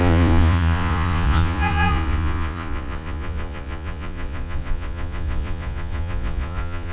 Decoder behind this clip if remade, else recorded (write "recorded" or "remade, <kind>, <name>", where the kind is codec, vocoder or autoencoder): remade, vocoder, Vocos